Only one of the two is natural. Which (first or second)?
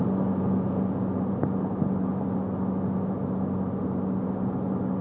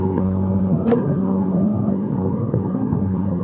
first